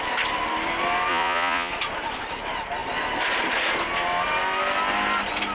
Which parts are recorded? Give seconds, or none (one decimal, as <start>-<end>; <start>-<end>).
0.0-1.1; 1.7-5.5